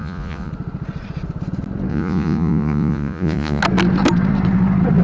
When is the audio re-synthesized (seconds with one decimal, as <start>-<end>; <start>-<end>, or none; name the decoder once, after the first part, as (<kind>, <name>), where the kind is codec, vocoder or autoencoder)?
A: 0.0-0.5 (vocoder, Vocos); 1.9-3.6